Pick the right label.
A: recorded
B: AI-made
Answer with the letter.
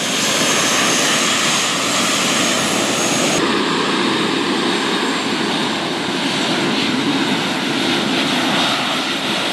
A